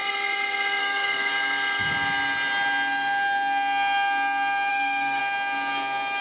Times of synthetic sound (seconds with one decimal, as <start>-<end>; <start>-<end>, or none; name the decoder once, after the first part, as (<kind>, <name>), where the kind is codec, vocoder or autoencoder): 0.8-1.3 (codec, DAC); 4.7-5.2